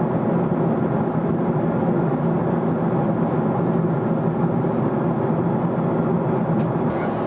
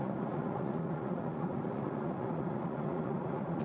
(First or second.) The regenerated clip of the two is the second